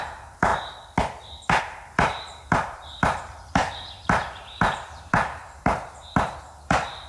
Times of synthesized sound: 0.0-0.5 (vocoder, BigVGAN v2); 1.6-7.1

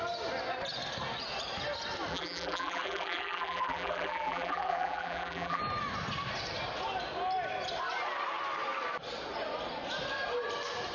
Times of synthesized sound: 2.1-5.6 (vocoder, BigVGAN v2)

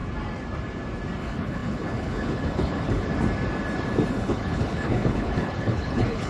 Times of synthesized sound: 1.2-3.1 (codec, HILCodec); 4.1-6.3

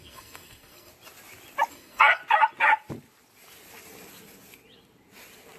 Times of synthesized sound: 0.0-0.9 (codec, SNAC); 1.7-2.2